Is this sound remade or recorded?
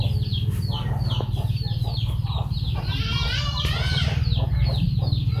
recorded